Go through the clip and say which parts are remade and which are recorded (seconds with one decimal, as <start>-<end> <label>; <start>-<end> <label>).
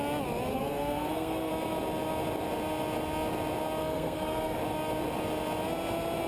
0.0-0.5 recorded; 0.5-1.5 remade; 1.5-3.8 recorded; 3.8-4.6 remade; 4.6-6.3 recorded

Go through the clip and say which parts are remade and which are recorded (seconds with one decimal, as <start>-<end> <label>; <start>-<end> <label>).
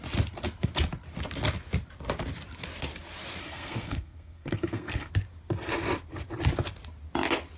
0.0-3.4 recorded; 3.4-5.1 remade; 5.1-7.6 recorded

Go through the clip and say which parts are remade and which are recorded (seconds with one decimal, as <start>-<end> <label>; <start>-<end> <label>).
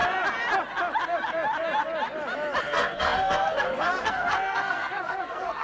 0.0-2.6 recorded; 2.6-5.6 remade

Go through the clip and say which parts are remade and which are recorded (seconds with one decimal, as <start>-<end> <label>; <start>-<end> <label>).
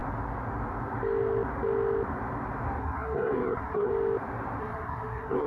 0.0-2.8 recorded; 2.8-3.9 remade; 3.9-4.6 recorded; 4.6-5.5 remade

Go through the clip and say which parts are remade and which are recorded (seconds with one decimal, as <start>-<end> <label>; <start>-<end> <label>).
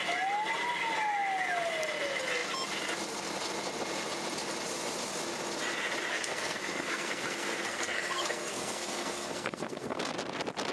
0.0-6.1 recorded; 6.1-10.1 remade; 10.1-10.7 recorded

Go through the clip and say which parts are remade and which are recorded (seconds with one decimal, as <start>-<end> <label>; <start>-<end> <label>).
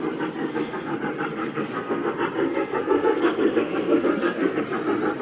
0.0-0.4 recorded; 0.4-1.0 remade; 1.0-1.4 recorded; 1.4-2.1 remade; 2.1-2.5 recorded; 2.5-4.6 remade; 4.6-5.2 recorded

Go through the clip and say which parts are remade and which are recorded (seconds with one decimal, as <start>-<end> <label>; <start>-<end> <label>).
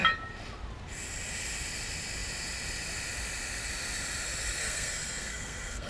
0.0-4.6 recorded; 4.6-5.9 remade